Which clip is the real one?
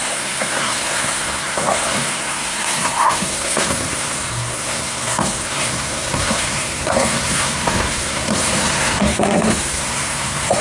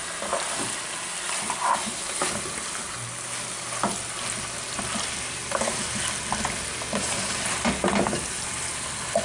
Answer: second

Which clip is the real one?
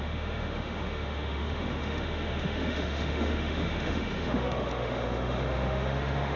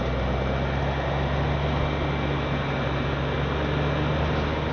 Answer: second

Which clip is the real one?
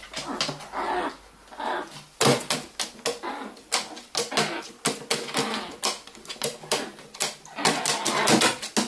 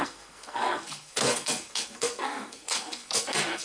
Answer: first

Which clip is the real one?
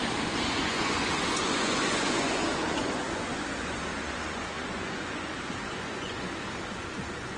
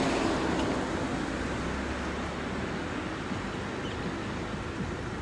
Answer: second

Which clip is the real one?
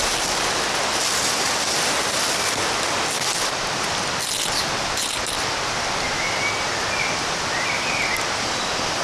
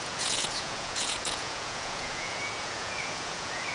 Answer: first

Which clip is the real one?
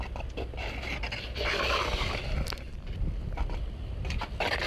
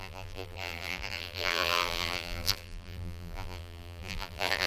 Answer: first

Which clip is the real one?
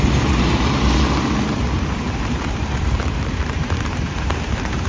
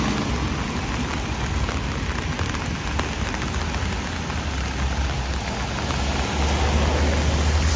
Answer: second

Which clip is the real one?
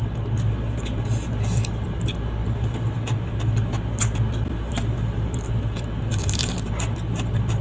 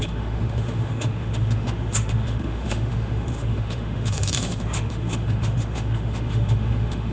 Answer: first